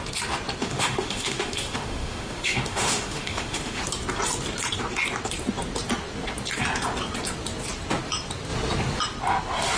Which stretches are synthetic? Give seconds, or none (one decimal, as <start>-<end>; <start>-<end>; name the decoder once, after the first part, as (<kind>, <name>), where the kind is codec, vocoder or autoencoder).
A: 0.6-3.8 (autoencoder, DAC-VAE)